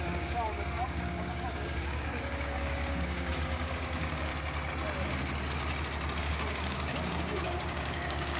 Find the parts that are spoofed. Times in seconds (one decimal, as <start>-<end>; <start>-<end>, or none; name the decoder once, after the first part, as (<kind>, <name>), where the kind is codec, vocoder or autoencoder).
0.0-4.3 (codec, DAC); 6.2-8.4